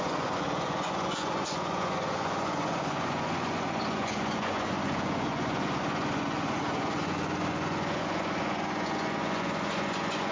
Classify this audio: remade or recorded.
remade